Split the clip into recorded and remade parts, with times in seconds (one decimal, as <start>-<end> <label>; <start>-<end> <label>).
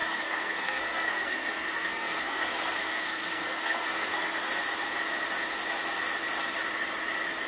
0.0-4.5 remade; 4.5-7.5 recorded